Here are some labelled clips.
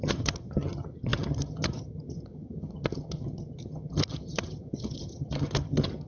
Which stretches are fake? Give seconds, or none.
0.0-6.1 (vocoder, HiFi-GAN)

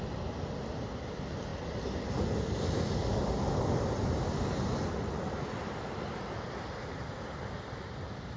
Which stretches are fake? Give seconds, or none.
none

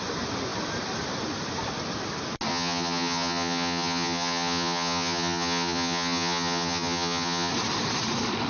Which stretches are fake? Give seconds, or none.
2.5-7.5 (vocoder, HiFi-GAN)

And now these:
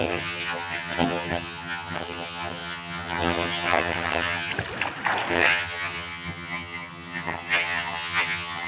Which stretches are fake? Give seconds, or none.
0.0-4.5 (vocoder, HiFi-GAN); 5.3-8.7

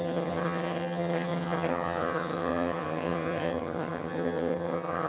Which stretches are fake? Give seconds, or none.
0.0-5.1 (vocoder, HiFi-GAN)

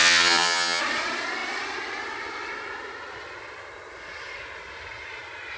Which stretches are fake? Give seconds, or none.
0.0-0.8 (vocoder, HiFi-GAN)